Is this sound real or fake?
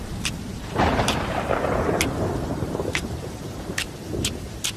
fake